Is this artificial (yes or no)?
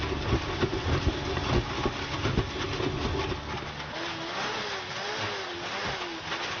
no